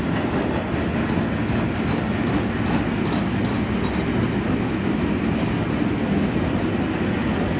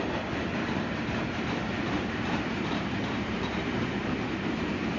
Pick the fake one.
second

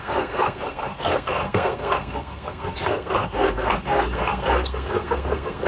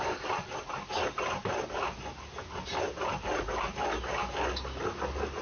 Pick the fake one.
first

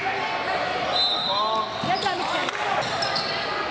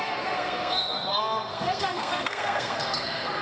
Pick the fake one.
second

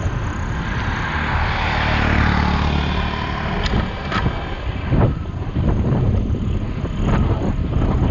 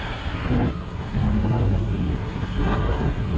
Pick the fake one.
second